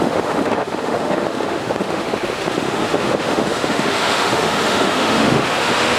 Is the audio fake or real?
fake